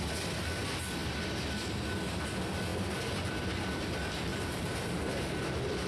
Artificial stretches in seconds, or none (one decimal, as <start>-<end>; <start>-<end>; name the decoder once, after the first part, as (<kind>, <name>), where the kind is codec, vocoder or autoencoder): 4.3-5.3 (vocoder, BigVGAN v2)